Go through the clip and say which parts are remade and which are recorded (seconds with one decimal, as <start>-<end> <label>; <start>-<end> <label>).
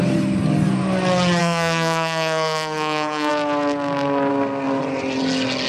0.0-1.4 recorded; 1.4-3.3 remade; 3.3-4.3 recorded; 4.3-4.8 remade; 4.8-5.7 recorded